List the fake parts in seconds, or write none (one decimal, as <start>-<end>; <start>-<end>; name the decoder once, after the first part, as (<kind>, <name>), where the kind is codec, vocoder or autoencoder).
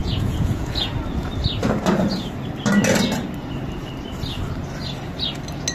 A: 0.0-0.9 (vocoder, Vocos)